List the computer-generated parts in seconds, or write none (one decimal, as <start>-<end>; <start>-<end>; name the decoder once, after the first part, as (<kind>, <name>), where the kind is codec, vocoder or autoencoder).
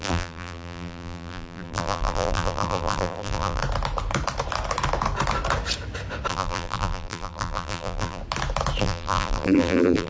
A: 0.0-3.6 (vocoder, BigVGAN v2); 6.3-8.2; 8.8-10.1